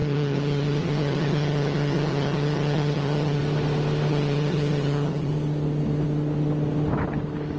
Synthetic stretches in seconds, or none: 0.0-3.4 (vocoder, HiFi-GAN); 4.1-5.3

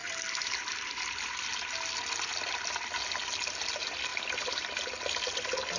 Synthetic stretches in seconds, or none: none

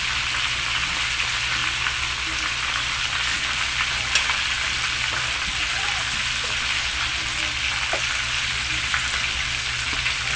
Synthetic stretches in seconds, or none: none

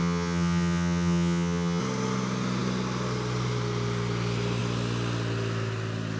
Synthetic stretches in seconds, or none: 0.0-1.8 (vocoder, HiFi-GAN)